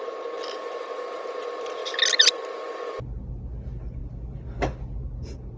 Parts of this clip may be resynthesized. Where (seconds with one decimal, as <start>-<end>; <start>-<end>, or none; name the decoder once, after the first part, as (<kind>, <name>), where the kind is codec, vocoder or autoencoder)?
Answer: none